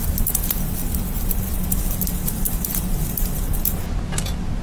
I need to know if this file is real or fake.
real